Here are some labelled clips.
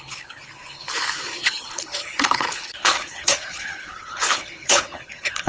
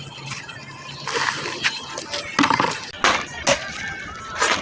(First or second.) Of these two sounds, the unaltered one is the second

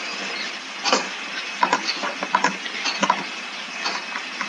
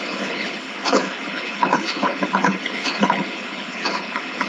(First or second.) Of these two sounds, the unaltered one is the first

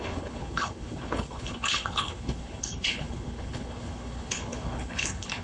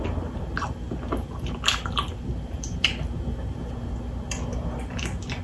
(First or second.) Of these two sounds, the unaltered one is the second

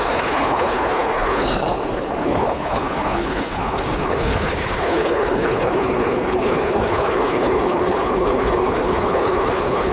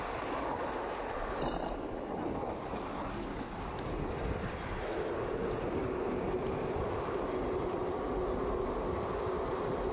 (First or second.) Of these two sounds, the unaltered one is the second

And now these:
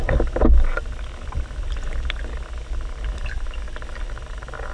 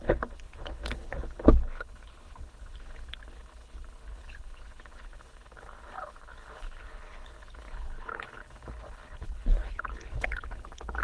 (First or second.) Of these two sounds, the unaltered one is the first